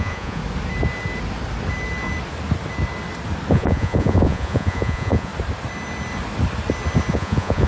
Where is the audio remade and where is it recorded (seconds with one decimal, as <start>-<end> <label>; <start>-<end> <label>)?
0.0-0.4 remade; 0.4-3.5 recorded; 3.5-5.3 remade; 5.3-7.1 recorded; 7.1-7.7 remade